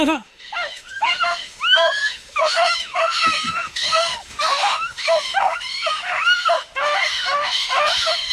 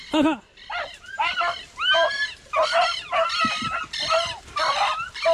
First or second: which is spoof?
first